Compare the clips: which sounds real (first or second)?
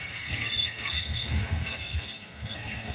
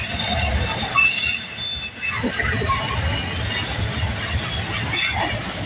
second